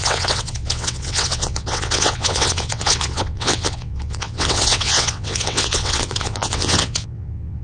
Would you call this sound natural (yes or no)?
no